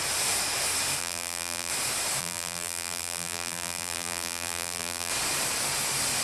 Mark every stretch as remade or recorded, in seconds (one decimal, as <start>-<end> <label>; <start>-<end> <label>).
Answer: 0.0-1.0 recorded; 1.0-1.7 remade; 1.7-2.2 recorded; 2.2-5.1 remade; 5.1-6.2 recorded